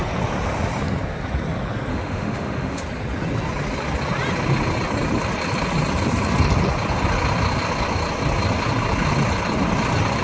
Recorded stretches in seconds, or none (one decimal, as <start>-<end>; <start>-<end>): 0.0-1.9; 2.8-10.2